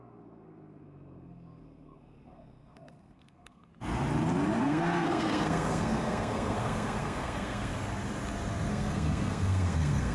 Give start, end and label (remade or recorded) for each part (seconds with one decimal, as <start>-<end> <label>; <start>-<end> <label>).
0.0-3.7 remade; 3.7-4.6 recorded; 4.6-7.7 remade; 7.7-8.7 recorded; 8.7-10.1 remade